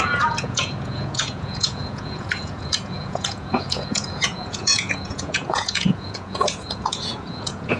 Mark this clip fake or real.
fake